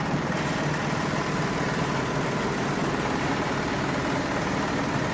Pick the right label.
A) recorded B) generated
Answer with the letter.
A